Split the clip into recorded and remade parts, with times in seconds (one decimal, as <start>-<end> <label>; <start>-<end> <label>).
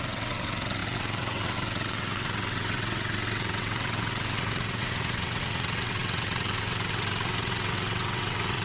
0.0-8.6 remade